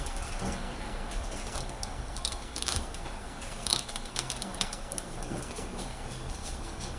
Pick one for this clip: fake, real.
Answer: fake